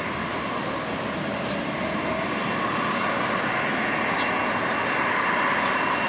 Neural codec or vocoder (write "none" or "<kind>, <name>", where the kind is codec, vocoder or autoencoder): none